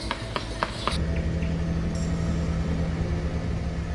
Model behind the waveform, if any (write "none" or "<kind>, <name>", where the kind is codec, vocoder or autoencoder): none